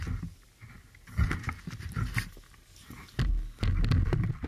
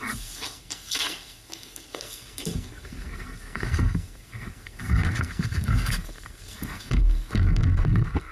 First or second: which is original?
first